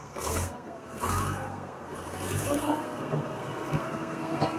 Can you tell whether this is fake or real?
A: fake